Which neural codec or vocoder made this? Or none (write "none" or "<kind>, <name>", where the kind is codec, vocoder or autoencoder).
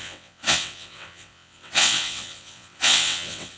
vocoder, WaveNeXt